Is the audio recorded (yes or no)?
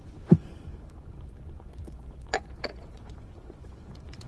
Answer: no